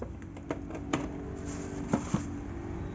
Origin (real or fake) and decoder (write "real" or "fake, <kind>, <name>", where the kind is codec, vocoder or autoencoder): real